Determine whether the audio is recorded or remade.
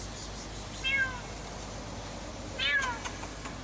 recorded